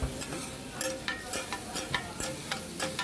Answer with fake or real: real